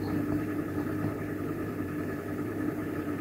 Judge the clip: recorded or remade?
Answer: remade